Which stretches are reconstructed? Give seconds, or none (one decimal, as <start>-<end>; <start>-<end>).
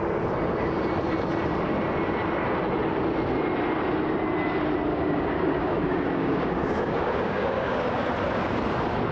4.9-8.1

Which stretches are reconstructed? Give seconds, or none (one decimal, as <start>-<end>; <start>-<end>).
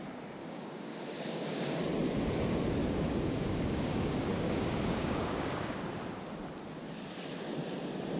0.4-1.8; 2.8-5.8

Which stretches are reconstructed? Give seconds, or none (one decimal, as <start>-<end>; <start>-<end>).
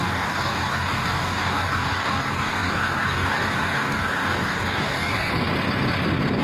0.0-5.3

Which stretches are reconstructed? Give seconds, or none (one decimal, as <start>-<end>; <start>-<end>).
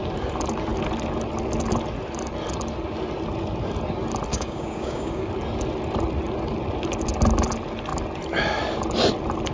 4.3-5.3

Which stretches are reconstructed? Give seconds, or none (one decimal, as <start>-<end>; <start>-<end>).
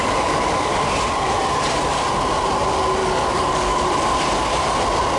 0.0-0.7; 3.0-3.9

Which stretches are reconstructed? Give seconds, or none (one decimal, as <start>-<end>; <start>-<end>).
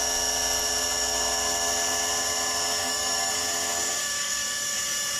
2.8-3.3; 4.0-5.2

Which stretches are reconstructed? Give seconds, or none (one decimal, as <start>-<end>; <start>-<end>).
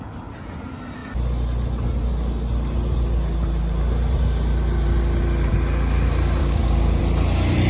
6.4-7.0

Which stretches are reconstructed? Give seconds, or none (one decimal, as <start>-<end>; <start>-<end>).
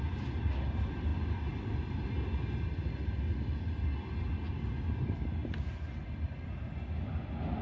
none